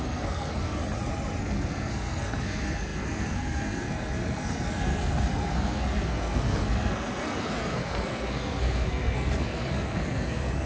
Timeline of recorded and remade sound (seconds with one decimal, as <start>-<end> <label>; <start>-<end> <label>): 0.0-0.8 remade; 0.8-1.4 recorded; 1.4-10.7 remade